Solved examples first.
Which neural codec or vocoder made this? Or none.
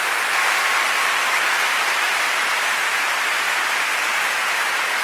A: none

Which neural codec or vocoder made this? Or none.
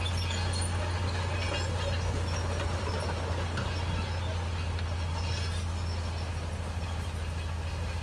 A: none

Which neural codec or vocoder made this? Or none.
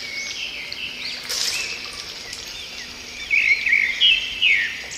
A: none